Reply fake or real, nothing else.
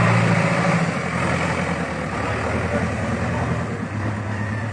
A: real